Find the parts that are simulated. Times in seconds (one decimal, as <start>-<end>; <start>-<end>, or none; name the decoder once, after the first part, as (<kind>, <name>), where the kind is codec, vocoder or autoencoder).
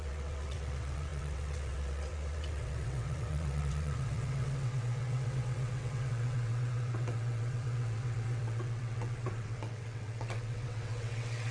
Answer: 0.0-11.5 (vocoder, WaveNeXt)